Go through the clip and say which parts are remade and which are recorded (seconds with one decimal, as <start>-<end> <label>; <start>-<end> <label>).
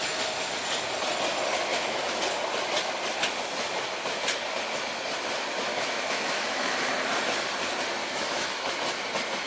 0.0-1.7 recorded; 1.7-2.2 remade; 2.2-5.7 recorded; 5.7-6.8 remade; 6.8-8.0 recorded; 8.0-8.7 remade; 8.7-9.5 recorded